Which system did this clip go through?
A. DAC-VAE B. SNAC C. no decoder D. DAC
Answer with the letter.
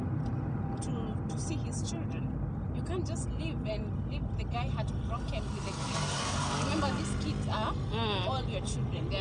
C